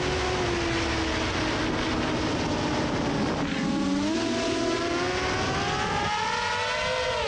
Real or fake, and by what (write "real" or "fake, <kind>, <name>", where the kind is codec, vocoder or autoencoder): real